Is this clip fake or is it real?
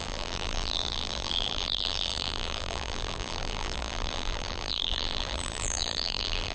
fake